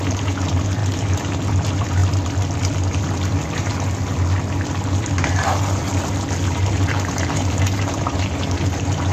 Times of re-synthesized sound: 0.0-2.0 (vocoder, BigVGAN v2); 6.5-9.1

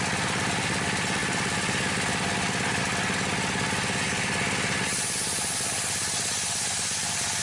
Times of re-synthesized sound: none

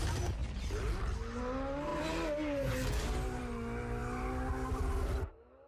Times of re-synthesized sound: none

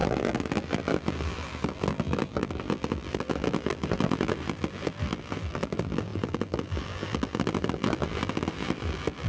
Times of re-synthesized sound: 0.0-9.3 (vocoder, BigVGAN v2)